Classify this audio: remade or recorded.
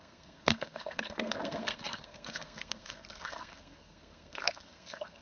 remade